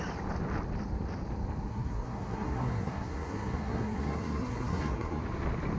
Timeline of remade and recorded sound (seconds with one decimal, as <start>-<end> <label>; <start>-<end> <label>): 0.0-1.7 recorded; 1.7-5.2 remade; 5.2-5.8 recorded